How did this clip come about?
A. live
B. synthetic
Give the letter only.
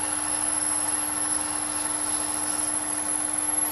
A